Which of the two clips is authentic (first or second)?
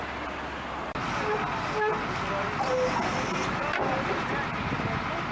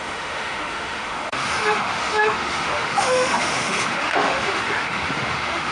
first